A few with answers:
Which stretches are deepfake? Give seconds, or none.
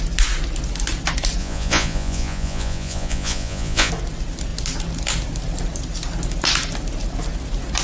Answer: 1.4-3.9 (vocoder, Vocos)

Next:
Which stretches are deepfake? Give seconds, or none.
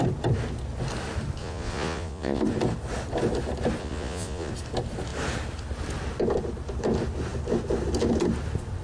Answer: 1.4-2.4 (vocoder, Vocos); 3.8-4.5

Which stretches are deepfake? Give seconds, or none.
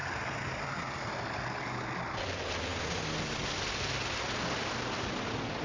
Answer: none